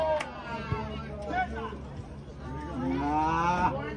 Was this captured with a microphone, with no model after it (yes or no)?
yes